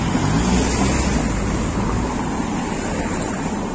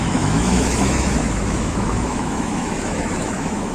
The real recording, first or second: first